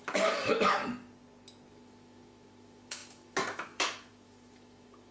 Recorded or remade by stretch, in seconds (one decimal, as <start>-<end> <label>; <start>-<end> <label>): 0.0-0.8 remade; 0.8-1.7 recorded; 1.7-5.1 remade